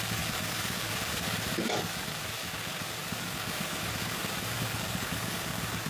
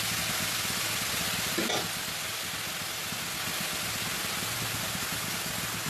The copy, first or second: first